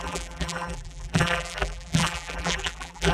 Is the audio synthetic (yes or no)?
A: yes